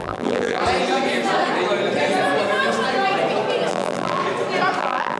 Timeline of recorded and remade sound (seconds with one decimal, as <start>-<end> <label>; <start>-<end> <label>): 0.0-0.6 remade; 0.6-3.7 recorded; 3.7-4.2 remade; 4.2-4.8 recorded; 4.8-5.2 remade